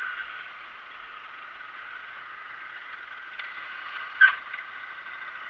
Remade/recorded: remade